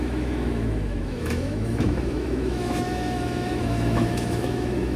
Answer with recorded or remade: remade